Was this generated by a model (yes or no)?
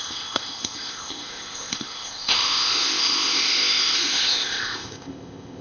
yes